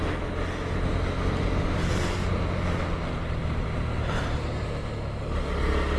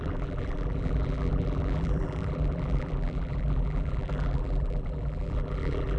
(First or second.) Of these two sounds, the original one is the first